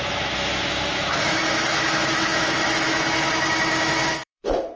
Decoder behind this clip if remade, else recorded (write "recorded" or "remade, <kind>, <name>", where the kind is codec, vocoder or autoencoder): remade, autoencoder, DAC-VAE